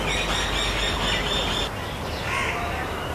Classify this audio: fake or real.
real